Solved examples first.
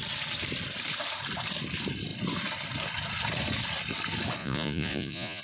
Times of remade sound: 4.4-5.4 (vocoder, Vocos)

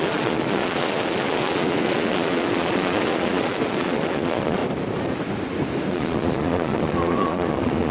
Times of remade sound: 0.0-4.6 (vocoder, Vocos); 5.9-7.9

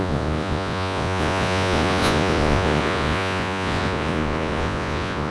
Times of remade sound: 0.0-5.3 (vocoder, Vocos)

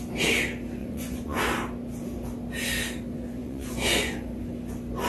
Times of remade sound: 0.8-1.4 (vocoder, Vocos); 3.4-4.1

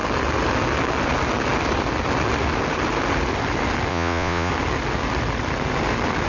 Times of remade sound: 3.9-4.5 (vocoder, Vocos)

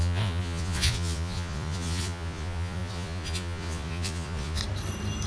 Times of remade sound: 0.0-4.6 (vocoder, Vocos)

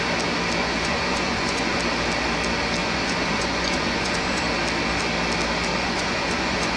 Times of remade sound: 0.6-1.8 (vocoder, Vocos); 2.8-4.4; 5.7-6.8

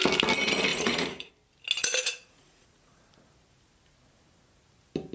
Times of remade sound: 0.7-1.3 (vocoder, Vocos); 1.8-3.0